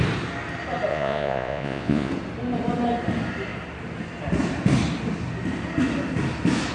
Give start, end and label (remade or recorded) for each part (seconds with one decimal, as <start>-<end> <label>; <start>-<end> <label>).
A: 0.0-0.9 recorded; 0.9-2.1 remade; 2.1-6.7 recorded